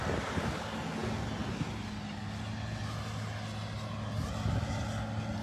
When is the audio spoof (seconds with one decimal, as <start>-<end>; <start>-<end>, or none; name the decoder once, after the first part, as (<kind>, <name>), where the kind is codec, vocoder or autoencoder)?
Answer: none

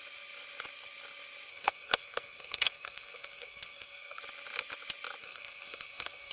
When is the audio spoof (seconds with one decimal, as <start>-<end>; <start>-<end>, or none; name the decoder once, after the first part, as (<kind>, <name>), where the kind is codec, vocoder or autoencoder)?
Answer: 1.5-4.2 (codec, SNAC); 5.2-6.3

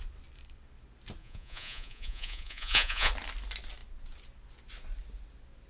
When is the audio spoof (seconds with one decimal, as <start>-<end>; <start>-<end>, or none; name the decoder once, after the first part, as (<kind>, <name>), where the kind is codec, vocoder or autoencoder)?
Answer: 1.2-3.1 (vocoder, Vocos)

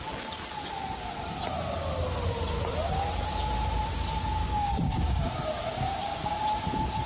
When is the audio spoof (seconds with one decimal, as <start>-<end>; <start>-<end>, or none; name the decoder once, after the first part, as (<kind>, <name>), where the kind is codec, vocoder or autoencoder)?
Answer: 4.4-5.3 (codec, DAC); 5.7-6.4

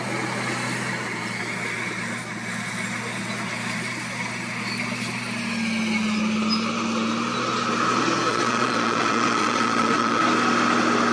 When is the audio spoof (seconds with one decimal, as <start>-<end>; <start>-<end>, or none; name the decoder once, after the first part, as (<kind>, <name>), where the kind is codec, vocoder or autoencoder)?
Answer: 8.3-10.2 (vocoder, Vocos)

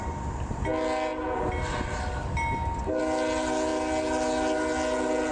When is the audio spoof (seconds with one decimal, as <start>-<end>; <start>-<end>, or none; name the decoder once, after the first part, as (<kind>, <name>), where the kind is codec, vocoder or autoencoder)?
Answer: none

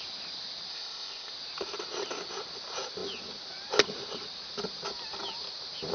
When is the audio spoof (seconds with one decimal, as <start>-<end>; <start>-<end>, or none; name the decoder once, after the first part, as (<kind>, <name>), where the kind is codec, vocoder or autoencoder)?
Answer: 0.7-1.3 (codec, ZipCodec)

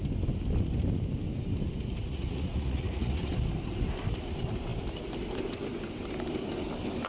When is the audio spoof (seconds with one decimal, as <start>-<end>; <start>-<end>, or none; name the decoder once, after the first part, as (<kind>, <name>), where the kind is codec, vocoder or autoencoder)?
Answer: 2.1-3.3 (vocoder, Vocos)